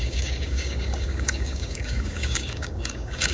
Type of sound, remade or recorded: remade